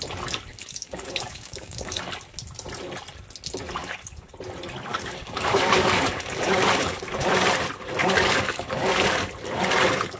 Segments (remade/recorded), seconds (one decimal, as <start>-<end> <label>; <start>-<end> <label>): 0.0-0.5 recorded; 0.5-2.1 remade; 2.1-3.8 recorded; 3.8-4.3 remade; 4.3-4.9 recorded; 4.9-7.0 remade; 7.0-8.0 recorded; 8.0-9.3 remade; 9.3-10.2 recorded